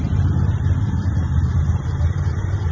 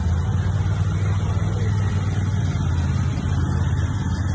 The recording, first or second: second